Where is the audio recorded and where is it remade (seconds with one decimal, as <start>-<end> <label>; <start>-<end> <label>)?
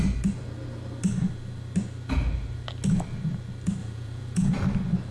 0.0-3.8 recorded; 3.8-4.5 remade; 4.5-5.1 recorded